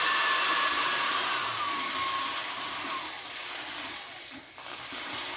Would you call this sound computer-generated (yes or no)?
yes